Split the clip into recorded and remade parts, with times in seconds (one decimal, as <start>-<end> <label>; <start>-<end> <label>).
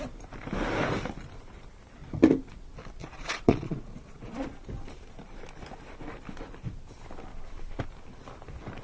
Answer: 0.0-3.0 recorded; 3.0-4.6 remade; 4.6-8.8 recorded